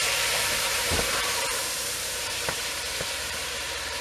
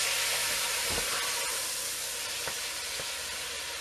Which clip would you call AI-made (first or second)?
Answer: first